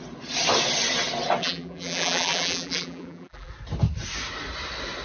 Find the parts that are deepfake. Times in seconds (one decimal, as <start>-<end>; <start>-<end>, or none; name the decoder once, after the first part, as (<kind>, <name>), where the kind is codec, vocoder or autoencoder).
1.4-3.5 (vocoder, BigVGAN v2)